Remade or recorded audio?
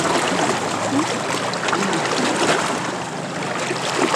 recorded